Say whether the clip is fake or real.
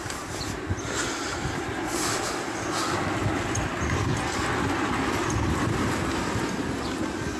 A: real